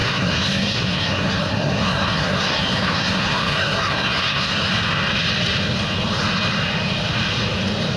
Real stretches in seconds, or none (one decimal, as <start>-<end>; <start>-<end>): 4.7-8.0